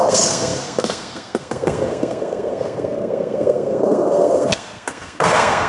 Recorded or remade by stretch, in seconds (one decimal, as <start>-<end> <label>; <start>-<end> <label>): 0.0-5.7 remade